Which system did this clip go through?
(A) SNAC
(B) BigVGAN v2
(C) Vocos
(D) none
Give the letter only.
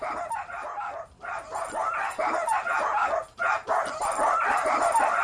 B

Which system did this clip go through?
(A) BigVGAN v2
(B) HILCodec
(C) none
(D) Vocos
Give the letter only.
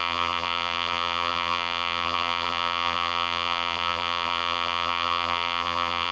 A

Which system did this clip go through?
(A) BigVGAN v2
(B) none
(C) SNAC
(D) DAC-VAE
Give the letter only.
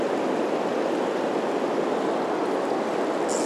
B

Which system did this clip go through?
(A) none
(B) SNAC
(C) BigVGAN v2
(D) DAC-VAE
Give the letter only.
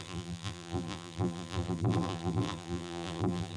C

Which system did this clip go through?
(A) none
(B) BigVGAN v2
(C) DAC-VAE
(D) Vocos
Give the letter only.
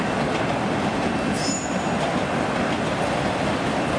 A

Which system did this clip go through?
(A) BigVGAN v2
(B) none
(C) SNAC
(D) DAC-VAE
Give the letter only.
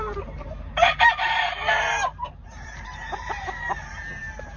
A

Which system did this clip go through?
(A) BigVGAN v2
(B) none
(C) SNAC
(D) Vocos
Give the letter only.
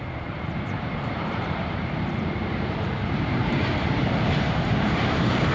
A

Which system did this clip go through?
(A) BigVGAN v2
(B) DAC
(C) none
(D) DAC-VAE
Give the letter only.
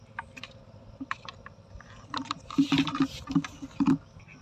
A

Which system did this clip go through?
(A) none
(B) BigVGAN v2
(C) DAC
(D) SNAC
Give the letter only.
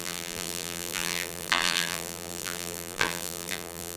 B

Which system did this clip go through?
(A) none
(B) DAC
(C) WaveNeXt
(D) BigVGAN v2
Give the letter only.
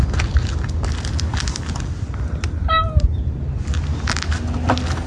A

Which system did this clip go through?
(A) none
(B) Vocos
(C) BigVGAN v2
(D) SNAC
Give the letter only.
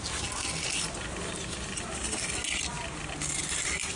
A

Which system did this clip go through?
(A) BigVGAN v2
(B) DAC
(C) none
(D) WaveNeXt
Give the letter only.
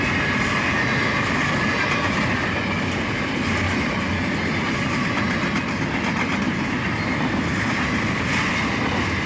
C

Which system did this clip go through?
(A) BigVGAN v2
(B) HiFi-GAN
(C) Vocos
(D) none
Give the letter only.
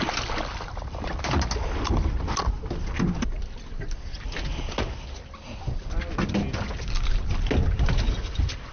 D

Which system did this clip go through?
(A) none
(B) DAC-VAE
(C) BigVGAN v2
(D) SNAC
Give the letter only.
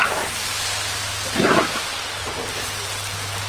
A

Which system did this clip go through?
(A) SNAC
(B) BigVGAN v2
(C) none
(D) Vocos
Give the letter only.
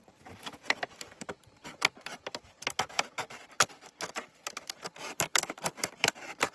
B